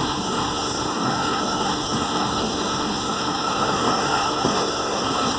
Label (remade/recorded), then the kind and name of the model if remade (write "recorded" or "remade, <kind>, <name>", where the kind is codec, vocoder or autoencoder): remade, codec, SNAC